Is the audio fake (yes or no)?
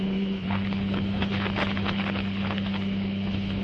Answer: yes